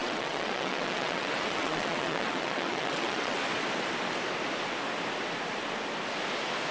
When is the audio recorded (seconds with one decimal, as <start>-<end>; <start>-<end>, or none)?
3.4-6.7